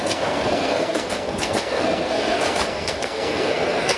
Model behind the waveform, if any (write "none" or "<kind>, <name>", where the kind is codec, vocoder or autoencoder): codec, SNAC